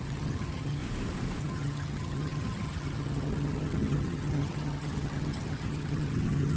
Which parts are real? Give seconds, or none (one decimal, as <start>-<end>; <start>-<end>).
0.8-1.4